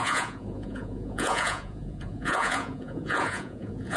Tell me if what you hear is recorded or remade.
remade